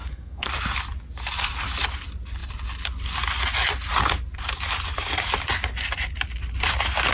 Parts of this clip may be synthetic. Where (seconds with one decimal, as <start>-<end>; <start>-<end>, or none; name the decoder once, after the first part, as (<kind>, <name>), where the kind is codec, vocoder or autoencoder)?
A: 0.0-0.5 (codec, SNAC)

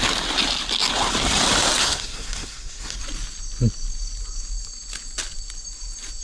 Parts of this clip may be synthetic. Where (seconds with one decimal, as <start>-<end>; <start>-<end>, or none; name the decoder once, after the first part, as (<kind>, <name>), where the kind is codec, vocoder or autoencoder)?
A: 1.8-3.0 (codec, SNAC)

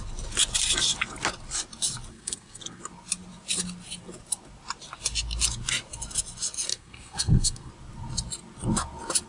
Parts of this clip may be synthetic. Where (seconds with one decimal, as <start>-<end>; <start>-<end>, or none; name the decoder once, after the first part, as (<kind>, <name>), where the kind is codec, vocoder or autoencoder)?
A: 2.1-2.8 (codec, SNAC); 6.7-7.7

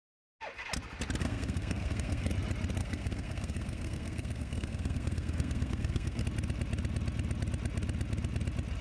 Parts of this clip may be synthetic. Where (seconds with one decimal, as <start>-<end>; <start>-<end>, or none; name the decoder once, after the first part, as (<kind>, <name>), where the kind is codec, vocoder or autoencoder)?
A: 1.2-2.3 (codec, SNAC); 2.8-6.2

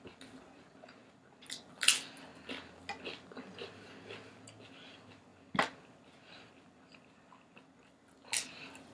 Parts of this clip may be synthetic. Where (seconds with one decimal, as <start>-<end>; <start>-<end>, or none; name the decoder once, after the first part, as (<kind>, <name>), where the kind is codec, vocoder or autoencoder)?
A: none

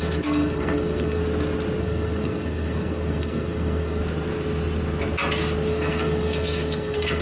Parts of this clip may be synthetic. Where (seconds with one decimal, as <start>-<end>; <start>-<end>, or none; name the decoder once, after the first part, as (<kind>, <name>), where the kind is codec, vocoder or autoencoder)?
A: 0.0-1.2 (codec, SNAC); 1.8-4.0; 5.7-7.2

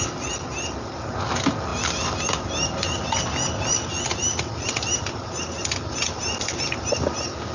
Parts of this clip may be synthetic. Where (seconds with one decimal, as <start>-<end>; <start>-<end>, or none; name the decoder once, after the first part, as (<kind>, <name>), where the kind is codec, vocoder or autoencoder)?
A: none

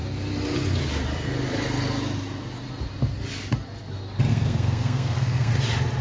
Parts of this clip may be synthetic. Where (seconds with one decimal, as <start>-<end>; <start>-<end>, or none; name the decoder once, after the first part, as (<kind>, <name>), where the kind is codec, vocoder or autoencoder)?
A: 4.3-5.5 (codec, SNAC)